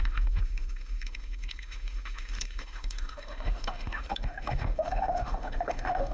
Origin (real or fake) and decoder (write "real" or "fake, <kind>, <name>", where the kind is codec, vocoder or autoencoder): fake, autoencoder, DAC-VAE